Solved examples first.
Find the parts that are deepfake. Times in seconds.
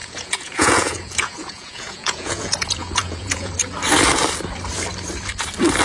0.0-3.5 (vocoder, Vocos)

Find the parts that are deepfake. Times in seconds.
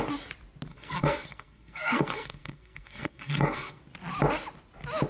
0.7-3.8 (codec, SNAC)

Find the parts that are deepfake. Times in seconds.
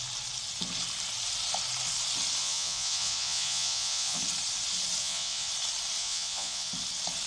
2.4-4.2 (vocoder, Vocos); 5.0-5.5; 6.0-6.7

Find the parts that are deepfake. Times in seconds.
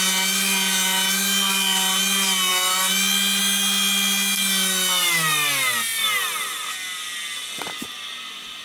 none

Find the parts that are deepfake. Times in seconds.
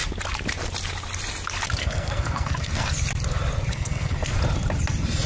1.8-2.9 (codec, SNAC); 3.7-4.4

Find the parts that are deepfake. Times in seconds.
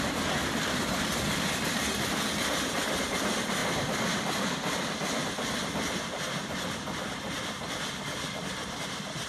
0.4-1.4 (vocoder, BigVGAN v2)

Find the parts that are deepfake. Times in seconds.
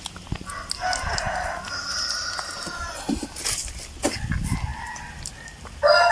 none